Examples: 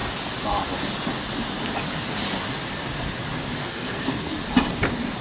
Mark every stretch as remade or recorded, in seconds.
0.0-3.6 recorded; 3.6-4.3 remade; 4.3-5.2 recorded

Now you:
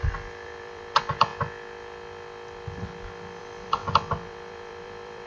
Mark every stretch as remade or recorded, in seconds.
0.0-1.3 remade; 1.3-3.4 recorded; 3.4-5.3 remade

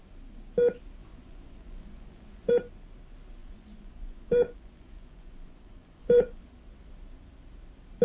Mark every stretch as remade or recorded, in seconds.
0.0-1.0 recorded; 1.0-2.5 remade; 2.5-3.4 recorded; 3.4-6.4 remade; 6.4-8.0 recorded

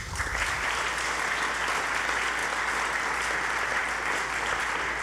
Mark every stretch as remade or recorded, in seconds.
0.0-5.0 recorded